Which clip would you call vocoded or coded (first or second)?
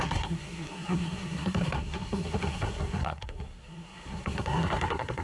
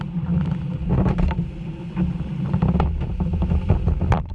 first